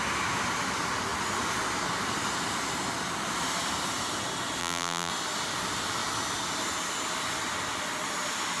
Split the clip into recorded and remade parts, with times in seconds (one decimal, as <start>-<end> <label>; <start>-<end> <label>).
0.0-4.6 recorded; 4.6-5.1 remade; 5.1-8.6 recorded